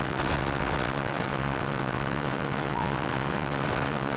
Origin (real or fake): fake